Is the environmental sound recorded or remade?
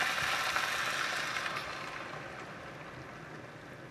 recorded